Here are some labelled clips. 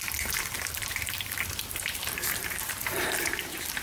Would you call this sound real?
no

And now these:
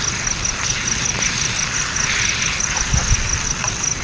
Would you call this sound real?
yes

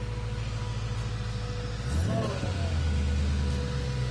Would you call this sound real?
yes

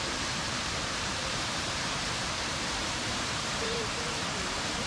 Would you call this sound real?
no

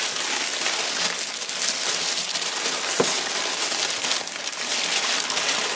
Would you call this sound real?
yes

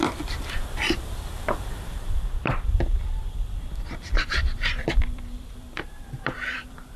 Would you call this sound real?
no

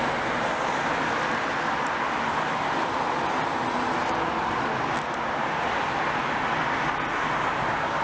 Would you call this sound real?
yes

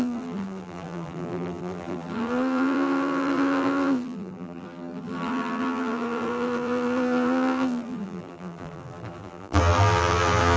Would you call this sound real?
no